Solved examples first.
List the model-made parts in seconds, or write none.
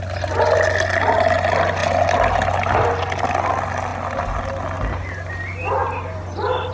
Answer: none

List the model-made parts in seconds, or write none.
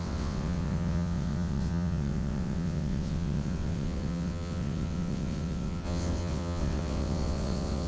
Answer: 0.0-7.9 (vocoder, WaveNeXt)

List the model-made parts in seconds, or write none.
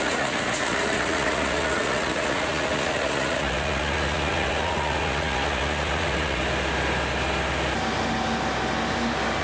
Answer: 0.0-6.4 (vocoder, Vocos)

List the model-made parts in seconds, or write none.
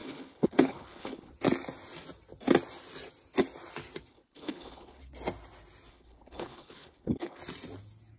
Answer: 0.0-1.3 (codec, HILCodec); 4.1-5.0; 5.9-7.4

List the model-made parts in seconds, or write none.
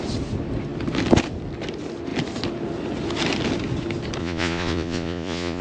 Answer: 4.2-5.6 (vocoder, Vocos)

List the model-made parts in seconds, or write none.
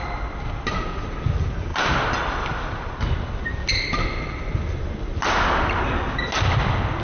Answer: none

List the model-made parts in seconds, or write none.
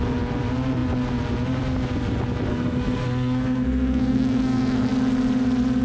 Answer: 2.5-4.9 (codec, SNAC)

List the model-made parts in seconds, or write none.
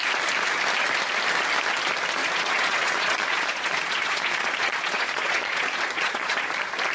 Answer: 2.2-6.3 (vocoder, Vocos)